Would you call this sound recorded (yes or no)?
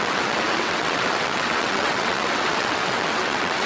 no